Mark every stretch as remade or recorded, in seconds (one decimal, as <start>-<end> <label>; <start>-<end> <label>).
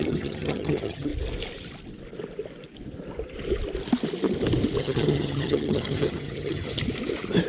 0.0-1.1 remade; 1.1-4.8 recorded; 4.8-6.7 remade; 6.7-7.5 recorded